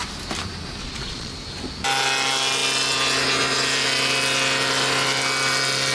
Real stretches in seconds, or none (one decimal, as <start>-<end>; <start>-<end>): 0.0-0.8; 1.3-5.9